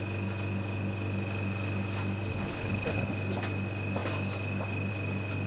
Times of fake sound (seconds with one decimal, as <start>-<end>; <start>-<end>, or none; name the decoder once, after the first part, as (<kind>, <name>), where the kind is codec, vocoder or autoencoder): 2.3-3.1 (codec, HILCodec)